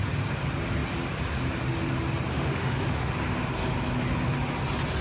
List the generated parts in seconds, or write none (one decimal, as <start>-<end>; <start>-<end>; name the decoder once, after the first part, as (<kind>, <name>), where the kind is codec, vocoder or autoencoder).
2.3-3.1 (autoencoder, DAC-VAE)